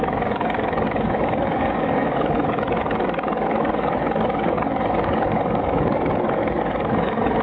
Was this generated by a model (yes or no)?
yes